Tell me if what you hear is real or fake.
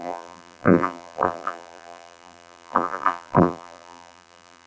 fake